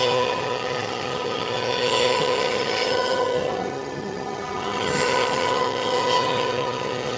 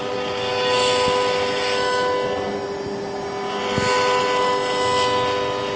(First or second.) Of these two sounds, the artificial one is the first